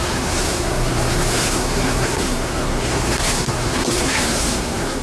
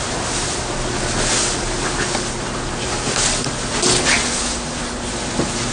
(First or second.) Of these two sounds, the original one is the second